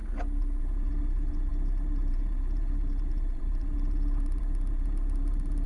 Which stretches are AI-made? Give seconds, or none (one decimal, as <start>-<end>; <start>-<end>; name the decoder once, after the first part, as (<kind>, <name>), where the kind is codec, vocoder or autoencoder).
0.6-5.7 (vocoder, BigVGAN v2)